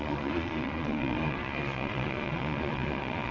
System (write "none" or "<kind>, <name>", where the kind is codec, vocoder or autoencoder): vocoder, Vocos